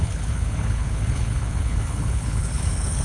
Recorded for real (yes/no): no